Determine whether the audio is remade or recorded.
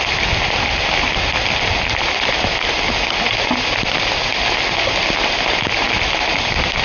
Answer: recorded